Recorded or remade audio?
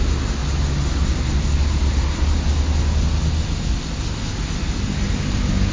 recorded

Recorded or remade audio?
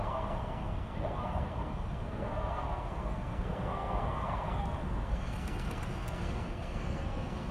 remade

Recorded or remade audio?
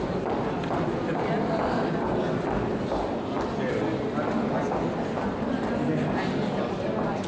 recorded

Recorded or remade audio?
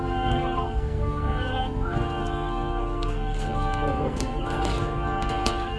remade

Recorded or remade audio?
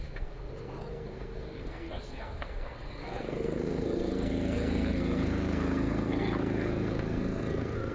remade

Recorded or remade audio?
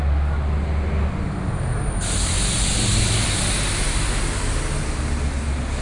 recorded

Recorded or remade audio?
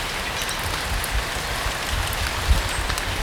recorded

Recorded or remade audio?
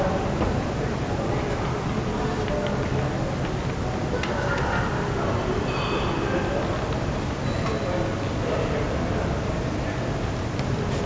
recorded